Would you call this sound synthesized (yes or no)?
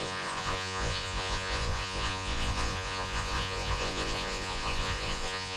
yes